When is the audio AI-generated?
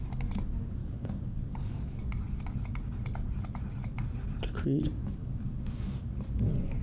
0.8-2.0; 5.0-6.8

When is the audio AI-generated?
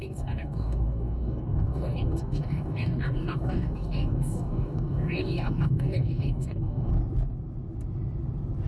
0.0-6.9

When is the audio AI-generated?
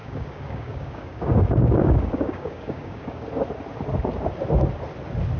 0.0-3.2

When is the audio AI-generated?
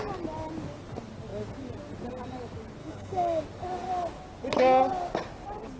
2.8-3.4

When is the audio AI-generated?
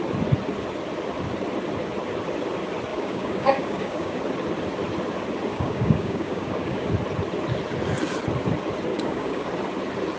2.9-4.2; 5.5-6.9; 8.9-9.5